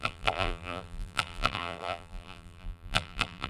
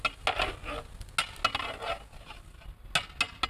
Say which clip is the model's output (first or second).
first